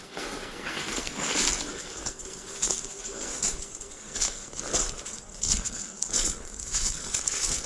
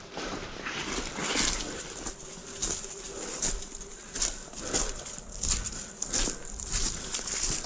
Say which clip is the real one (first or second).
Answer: second